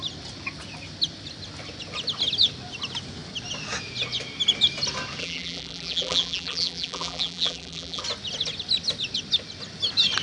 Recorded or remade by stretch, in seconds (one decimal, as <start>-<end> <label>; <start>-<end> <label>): 0.0-5.2 recorded; 5.2-8.0 remade; 8.0-10.2 recorded